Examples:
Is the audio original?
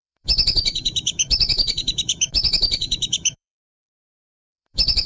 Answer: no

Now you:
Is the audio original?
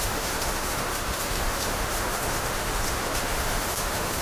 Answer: no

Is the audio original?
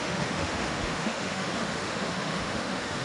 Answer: no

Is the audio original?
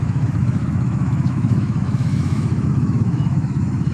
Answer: no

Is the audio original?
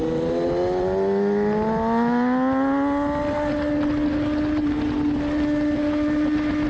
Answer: yes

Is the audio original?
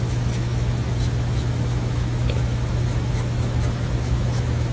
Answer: no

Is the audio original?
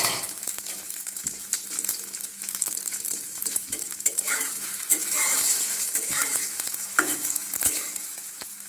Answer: no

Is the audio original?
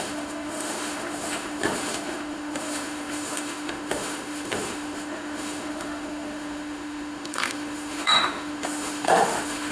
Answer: no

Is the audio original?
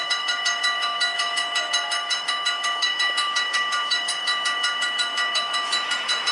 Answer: no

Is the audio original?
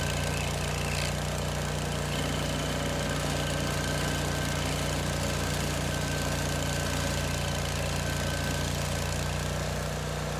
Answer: yes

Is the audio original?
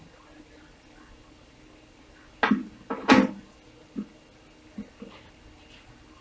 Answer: yes